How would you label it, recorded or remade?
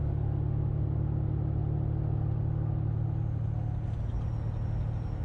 recorded